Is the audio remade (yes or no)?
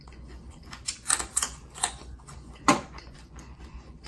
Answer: yes